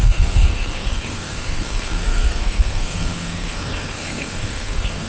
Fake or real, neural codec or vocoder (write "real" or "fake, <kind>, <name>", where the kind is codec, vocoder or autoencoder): fake, codec, SNAC